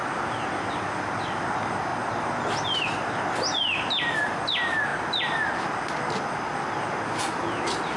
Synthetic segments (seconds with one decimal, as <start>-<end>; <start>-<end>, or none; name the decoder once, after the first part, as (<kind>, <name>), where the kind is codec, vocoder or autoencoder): none